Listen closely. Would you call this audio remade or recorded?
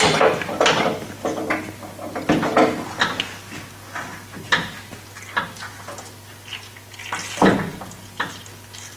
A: recorded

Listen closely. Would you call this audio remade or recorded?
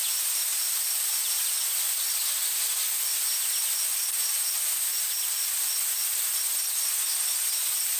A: recorded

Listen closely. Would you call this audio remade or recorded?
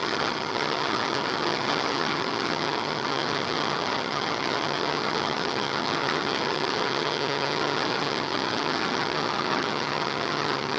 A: remade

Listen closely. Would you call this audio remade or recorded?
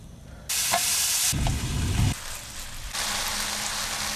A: recorded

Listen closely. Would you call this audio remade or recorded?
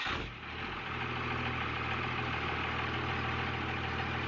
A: recorded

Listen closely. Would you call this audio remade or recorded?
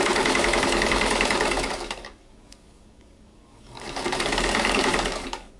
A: remade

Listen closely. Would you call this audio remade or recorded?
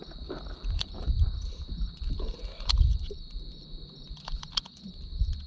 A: remade